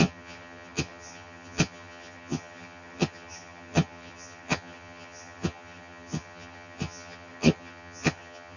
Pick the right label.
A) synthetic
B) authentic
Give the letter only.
A